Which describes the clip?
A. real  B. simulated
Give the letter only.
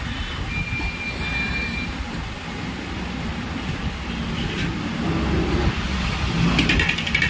A